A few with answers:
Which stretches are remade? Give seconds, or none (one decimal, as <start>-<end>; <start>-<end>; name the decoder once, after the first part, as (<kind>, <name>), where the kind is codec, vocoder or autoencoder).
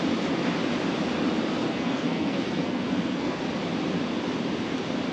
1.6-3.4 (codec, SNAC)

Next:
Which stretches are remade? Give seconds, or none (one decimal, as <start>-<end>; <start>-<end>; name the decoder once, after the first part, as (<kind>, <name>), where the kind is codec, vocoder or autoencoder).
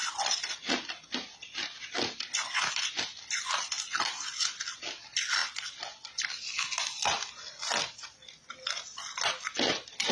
none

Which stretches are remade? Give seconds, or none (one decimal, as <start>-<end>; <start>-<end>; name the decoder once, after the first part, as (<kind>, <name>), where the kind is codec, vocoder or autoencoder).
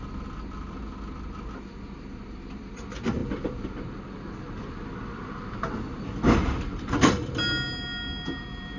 none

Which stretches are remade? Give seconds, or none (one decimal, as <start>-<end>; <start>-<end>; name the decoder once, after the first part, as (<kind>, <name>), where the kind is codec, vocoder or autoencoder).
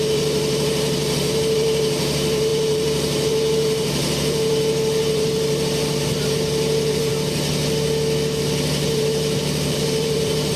0.0-7.1 (vocoder, BigVGAN v2); 8.4-10.6